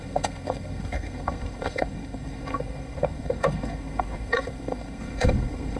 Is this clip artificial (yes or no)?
yes